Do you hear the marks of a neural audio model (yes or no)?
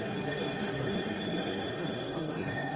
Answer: yes